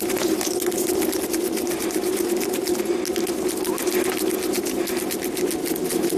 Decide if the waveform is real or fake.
real